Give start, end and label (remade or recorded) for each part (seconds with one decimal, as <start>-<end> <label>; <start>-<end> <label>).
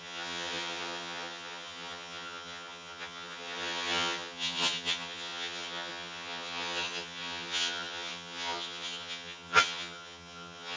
0.0-10.8 remade